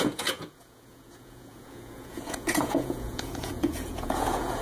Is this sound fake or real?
fake